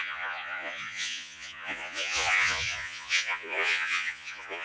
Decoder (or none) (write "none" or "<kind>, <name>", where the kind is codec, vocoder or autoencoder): vocoder, Vocos